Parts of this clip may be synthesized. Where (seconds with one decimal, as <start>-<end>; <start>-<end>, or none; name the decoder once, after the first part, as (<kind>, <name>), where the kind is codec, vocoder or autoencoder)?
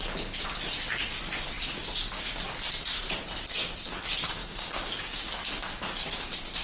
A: 4.4-5.3 (codec, DAC)